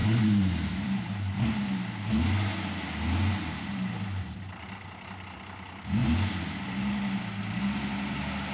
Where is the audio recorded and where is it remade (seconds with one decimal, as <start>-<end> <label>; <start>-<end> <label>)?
0.0-1.4 remade; 1.4-8.5 recorded